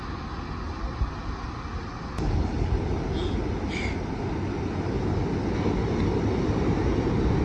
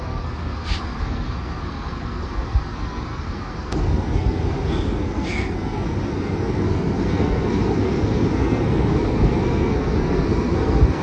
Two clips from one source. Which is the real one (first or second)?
first